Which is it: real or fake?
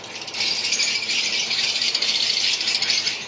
fake